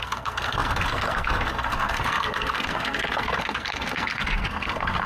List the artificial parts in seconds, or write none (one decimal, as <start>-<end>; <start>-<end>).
0.0-5.1